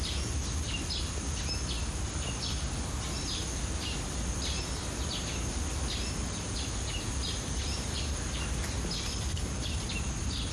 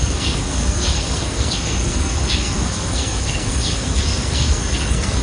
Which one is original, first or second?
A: first